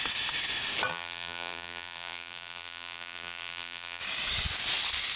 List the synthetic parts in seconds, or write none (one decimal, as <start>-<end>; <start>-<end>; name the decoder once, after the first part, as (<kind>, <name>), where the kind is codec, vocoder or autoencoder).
0.9-4.0 (vocoder, BigVGAN v2)